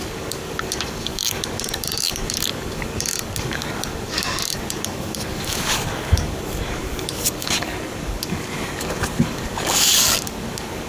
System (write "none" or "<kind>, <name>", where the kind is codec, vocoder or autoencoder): codec, DAC